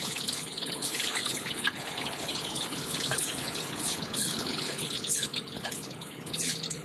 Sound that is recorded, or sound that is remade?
remade